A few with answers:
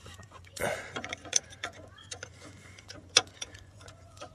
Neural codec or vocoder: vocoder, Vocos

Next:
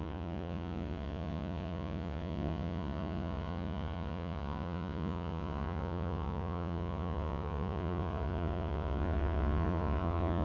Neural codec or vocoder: vocoder, Vocos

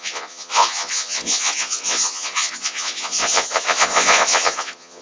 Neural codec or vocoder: vocoder, Vocos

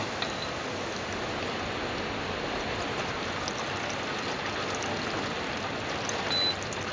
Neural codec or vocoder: none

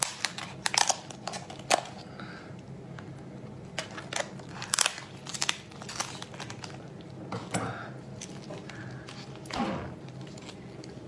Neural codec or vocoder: none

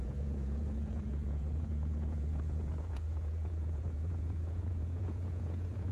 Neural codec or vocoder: vocoder, Vocos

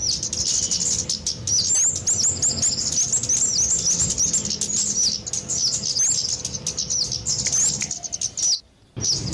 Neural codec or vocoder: none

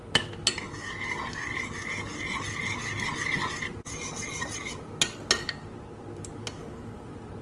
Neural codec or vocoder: none